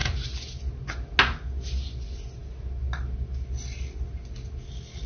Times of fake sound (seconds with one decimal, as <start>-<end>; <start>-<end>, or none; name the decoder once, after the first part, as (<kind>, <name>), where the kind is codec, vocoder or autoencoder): none